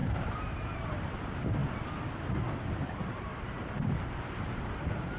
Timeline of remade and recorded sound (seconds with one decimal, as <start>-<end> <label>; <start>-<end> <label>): 0.0-1.6 remade; 1.6-2.8 recorded; 2.8-3.3 remade; 3.3-4.4 recorded; 4.4-5.2 remade